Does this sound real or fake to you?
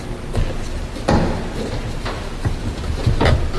real